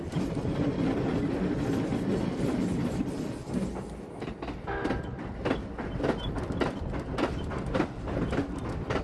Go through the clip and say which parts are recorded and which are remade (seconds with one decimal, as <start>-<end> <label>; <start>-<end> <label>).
0.0-9.0 recorded